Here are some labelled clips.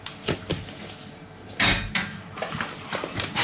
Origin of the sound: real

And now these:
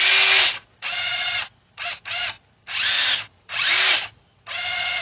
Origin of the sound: real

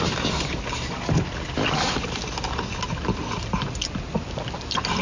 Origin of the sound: real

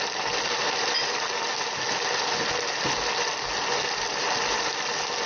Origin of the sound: real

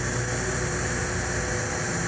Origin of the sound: real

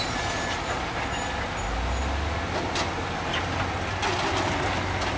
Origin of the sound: real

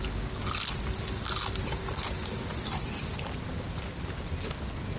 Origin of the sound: real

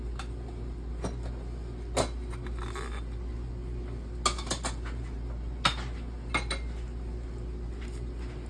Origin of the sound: real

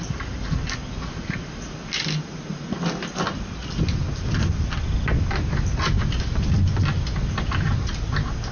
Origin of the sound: real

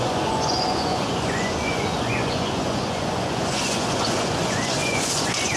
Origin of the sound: fake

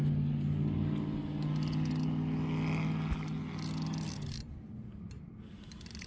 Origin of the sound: real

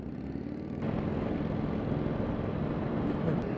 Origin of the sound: real